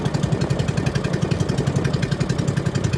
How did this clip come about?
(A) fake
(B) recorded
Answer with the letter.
B